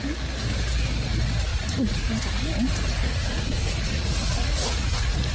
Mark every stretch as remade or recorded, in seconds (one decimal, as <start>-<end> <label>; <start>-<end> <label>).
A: 0.0-1.5 recorded; 1.5-2.1 remade; 2.1-3.0 recorded; 3.0-5.3 remade